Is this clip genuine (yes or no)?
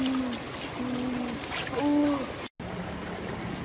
yes